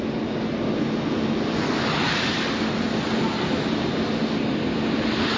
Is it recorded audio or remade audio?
recorded